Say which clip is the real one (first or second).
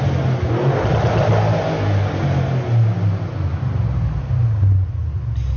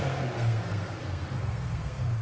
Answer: first